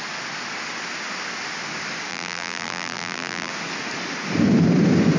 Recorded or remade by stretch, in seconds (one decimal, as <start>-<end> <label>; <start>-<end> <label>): 0.0-2.1 recorded; 2.1-3.5 remade; 3.5-5.2 recorded